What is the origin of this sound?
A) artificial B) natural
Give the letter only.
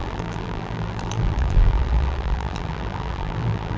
A